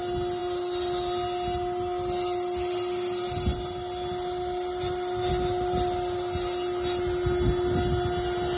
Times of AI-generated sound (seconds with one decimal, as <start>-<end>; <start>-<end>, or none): none